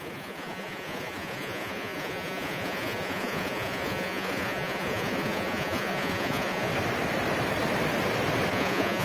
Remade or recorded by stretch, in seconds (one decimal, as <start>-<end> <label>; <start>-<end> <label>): 0.0-6.7 remade; 6.7-8.5 recorded; 8.5-9.0 remade